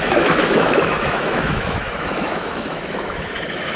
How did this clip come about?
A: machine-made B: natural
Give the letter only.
A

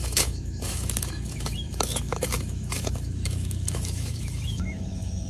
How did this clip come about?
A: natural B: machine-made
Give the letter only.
B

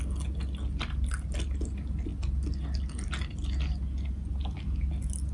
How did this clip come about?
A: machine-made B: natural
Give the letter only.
B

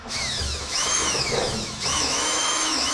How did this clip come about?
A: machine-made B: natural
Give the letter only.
A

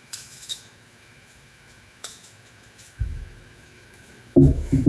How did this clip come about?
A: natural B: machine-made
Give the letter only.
B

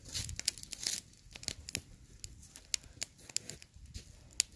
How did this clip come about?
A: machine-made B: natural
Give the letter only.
B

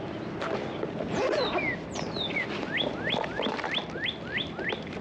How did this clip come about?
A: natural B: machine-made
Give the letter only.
A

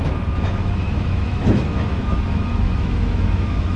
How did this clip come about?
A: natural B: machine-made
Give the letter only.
B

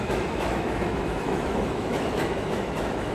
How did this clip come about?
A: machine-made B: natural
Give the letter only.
A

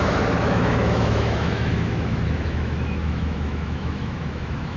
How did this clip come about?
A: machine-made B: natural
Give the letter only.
A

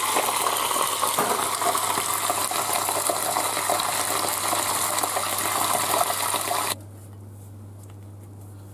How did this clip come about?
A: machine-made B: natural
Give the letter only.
B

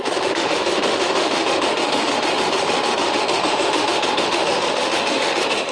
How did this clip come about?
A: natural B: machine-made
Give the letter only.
B